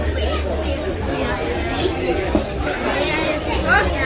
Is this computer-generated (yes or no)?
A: no